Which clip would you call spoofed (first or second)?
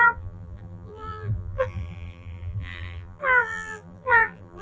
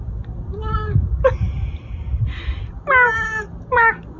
first